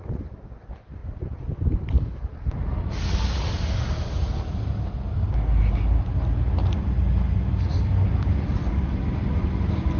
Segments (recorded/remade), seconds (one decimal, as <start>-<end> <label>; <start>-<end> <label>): 0.0-10.0 recorded